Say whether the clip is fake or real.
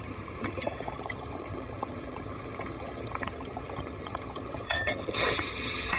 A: fake